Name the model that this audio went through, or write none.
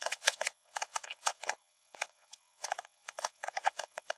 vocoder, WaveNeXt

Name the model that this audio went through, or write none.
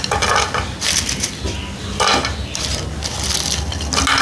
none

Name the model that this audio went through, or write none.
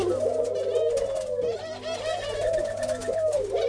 none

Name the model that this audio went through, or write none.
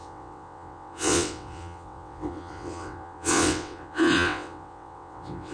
vocoder, WaveNeXt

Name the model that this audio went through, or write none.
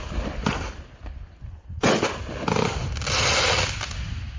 none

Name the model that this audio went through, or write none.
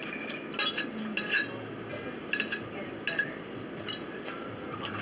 none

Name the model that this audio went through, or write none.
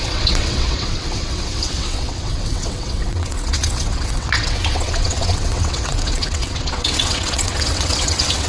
vocoder, WaveNeXt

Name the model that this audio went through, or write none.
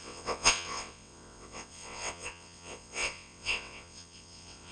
vocoder, WaveNeXt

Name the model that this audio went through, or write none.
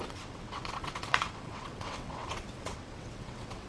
vocoder, WaveNeXt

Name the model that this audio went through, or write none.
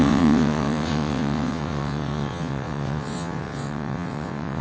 vocoder, WaveNeXt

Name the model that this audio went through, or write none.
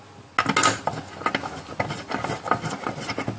none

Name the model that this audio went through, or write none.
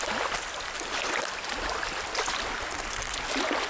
none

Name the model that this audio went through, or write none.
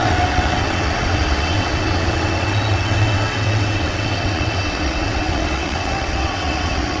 vocoder, WaveNeXt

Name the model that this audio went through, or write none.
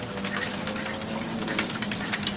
none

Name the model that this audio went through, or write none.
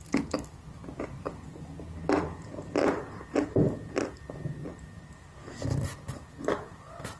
none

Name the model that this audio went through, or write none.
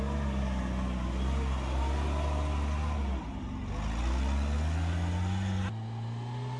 none